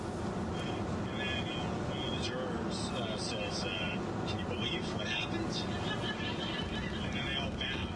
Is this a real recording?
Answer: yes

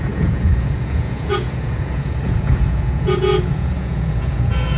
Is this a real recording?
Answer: no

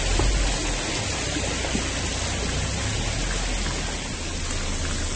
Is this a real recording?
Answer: yes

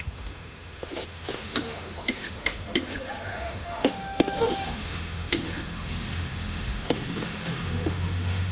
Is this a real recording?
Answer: no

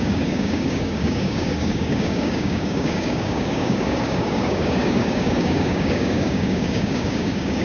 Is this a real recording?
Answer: no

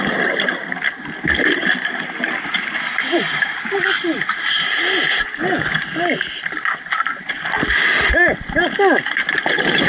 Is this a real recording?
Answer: yes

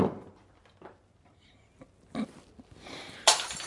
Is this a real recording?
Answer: yes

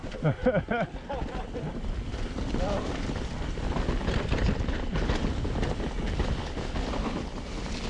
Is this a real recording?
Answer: yes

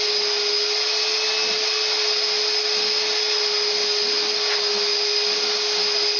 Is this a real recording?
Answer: yes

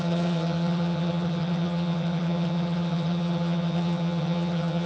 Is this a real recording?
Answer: no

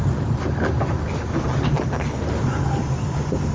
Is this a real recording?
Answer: yes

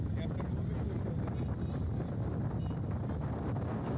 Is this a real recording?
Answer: yes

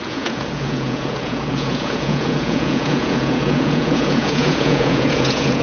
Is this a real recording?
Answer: no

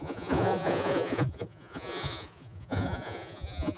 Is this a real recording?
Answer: no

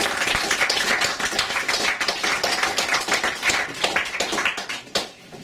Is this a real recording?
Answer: yes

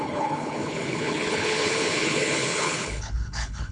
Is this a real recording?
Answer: no